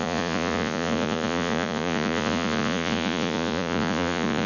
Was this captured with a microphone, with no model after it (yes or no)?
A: no